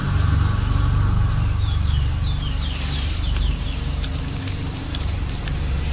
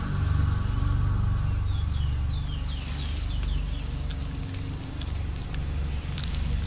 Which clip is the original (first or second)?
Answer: second